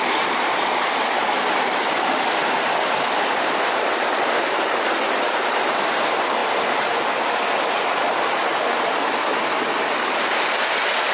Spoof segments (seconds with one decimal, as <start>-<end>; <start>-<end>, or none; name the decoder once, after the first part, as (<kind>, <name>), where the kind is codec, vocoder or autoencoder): 0.0-6.4 (vocoder, BigVGAN v2); 10.1-11.1